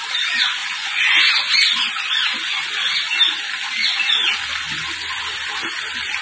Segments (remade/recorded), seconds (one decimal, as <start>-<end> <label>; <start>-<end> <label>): 0.0-0.6 recorded; 0.6-1.3 remade; 1.3-6.2 recorded